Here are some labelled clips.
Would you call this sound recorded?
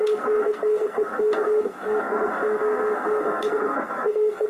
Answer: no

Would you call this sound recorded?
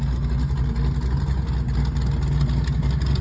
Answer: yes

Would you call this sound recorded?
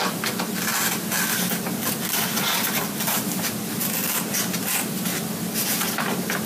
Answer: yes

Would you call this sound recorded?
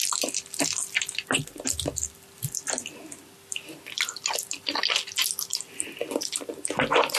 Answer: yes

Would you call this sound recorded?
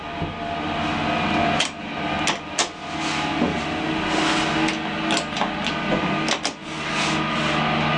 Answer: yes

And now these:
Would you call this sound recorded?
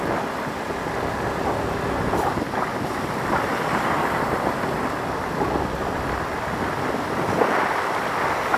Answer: yes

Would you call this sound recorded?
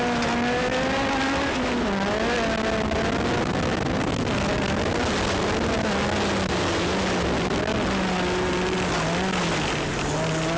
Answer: yes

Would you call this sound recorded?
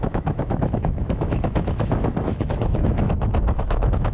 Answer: no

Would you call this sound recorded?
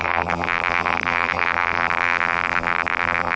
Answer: no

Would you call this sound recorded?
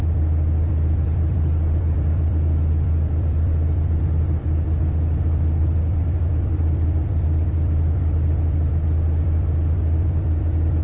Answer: no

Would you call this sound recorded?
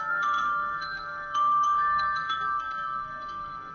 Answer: no